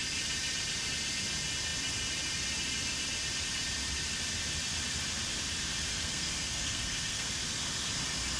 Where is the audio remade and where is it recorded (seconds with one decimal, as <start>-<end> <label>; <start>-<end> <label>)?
0.0-5.9 recorded; 5.9-7.3 remade; 7.3-8.4 recorded